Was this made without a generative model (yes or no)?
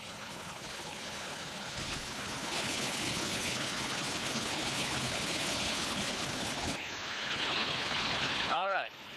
no